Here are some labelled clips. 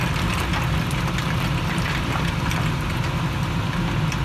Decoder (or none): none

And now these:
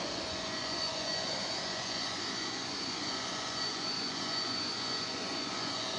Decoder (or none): vocoder, Vocos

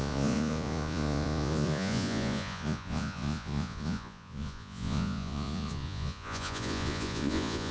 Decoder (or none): vocoder, Vocos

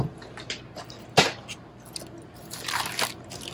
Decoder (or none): none